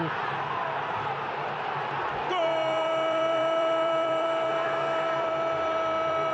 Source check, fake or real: fake